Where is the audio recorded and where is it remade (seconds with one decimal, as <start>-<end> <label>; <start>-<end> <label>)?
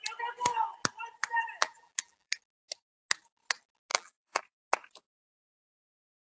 0.0-1.6 recorded; 1.6-2.3 remade; 2.3-3.9 recorded; 3.9-4.4 remade; 4.4-6.3 recorded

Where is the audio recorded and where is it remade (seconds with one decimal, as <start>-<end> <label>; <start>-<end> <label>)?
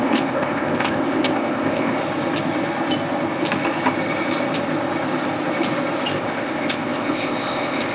0.0-2.0 remade; 2.0-6.1 recorded; 6.1-7.9 remade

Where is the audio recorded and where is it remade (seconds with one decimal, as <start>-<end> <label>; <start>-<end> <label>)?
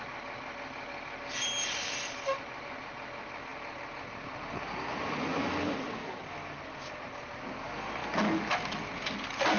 0.0-9.6 recorded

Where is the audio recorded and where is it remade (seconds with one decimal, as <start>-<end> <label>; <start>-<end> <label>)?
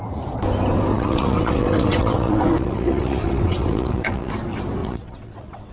0.0-0.9 recorded; 0.9-4.3 remade; 4.3-4.8 recorded; 4.8-5.7 remade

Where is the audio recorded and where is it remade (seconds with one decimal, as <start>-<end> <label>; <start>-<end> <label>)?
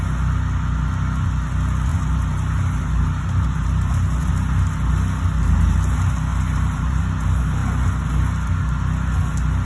0.0-1.9 recorded; 1.9-4.3 remade; 4.3-6.3 recorded; 6.3-7.0 remade; 7.0-9.6 recorded